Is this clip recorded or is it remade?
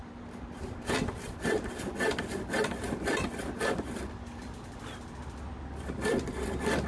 recorded